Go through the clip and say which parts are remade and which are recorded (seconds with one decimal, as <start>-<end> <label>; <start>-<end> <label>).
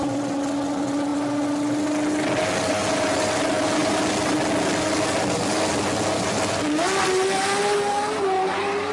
0.0-8.9 recorded